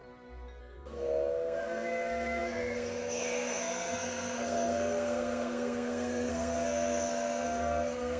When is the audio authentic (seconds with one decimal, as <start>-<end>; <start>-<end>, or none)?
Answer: 0.0-0.6